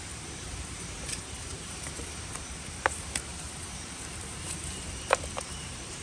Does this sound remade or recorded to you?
remade